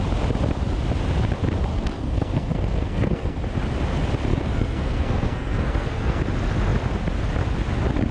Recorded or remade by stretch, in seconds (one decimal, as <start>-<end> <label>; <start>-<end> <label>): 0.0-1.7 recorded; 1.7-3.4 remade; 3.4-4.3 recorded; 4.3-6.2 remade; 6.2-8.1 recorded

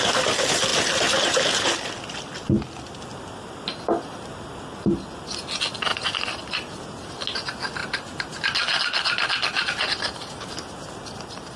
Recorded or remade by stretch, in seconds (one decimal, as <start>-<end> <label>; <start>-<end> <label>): 0.0-11.6 recorded

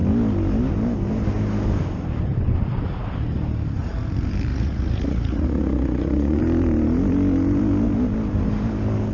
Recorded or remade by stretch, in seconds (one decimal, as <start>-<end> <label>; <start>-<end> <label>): 0.0-4.5 recorded; 4.5-6.4 remade; 6.4-9.1 recorded